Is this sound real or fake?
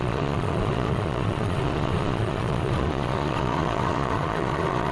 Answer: fake